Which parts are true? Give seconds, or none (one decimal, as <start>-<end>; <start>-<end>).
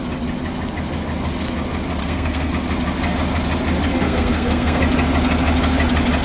0.0-2.0; 2.5-3.9; 4.8-6.2